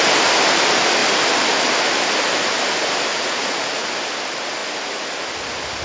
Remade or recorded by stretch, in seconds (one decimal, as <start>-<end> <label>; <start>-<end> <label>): 0.0-3.1 recorded; 3.1-4.0 remade; 4.0-5.8 recorded

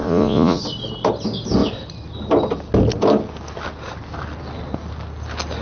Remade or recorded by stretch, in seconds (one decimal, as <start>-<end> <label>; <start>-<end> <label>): 0.0-0.6 remade; 0.6-5.6 recorded

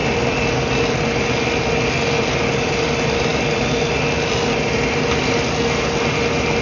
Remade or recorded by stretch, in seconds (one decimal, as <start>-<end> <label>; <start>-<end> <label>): 0.0-6.6 recorded

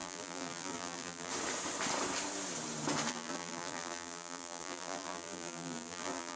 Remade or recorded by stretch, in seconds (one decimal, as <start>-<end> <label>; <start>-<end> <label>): 0.0-1.3 remade; 1.3-3.1 recorded; 3.1-6.4 remade

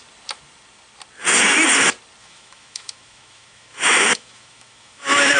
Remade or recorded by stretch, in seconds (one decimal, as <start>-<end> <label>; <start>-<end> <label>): 0.0-2.2 recorded; 2.2-5.4 remade

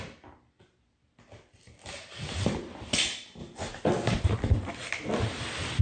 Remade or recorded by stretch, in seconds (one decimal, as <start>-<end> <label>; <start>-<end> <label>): 0.0-5.8 recorded

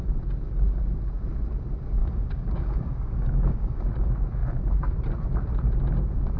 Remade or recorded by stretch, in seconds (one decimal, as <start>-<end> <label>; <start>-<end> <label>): 0.0-2.0 recorded; 2.0-3.8 remade; 3.8-6.4 recorded